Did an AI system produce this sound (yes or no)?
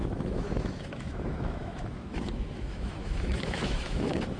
yes